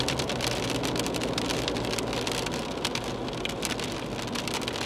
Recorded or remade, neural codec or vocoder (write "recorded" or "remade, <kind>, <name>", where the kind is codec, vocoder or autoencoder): recorded